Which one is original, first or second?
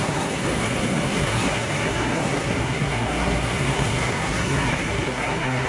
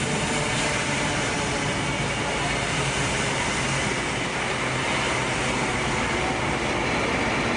second